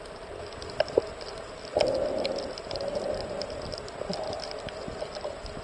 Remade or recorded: recorded